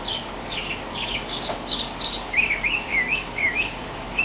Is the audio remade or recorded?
remade